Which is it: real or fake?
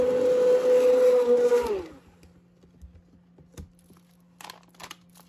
real